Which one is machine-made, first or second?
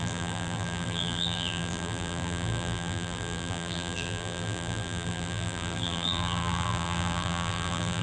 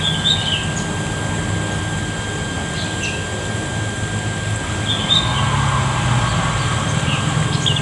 first